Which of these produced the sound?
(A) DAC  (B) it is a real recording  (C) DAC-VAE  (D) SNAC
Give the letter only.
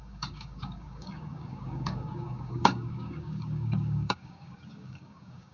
A